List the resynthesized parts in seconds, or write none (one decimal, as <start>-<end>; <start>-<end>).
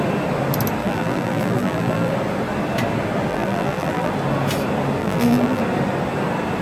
0.8-2.1; 3.3-4.1; 5.0-5.6